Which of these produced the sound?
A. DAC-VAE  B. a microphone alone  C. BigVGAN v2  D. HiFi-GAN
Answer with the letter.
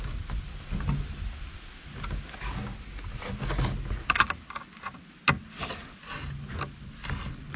B